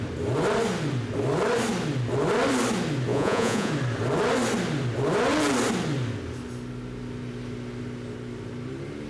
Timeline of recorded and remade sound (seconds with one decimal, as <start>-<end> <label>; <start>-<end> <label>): 0.0-3.1 recorded; 3.1-3.7 remade; 3.7-9.1 recorded